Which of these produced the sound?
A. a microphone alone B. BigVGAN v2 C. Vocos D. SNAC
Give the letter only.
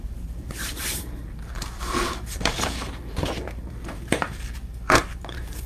B